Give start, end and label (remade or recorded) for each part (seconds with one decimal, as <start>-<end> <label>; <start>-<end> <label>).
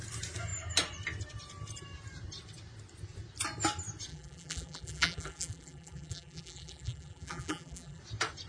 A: 0.0-4.1 recorded; 4.1-8.0 remade; 8.0-8.5 recorded